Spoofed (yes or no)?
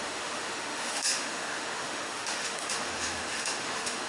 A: yes